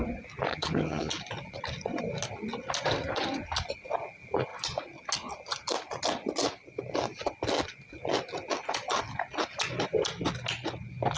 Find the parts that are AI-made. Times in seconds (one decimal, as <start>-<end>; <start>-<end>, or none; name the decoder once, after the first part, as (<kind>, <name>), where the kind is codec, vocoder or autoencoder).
0.5-1.1 (vocoder, HiFi-GAN)